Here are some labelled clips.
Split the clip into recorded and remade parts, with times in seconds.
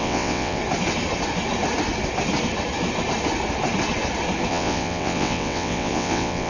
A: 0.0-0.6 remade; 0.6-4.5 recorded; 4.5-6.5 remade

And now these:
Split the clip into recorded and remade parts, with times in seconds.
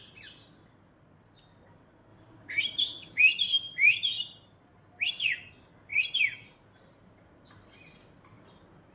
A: 0.0-2.1 recorded; 2.1-3.2 remade; 3.2-5.9 recorded; 5.9-7.3 remade; 7.3-8.9 recorded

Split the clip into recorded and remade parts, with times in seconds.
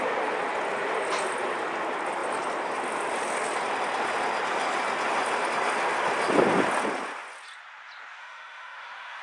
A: 0.0-8.2 recorded; 8.2-9.2 remade